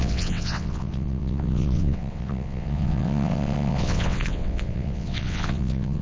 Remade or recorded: remade